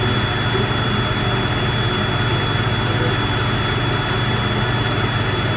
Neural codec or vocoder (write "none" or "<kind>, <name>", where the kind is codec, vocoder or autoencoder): none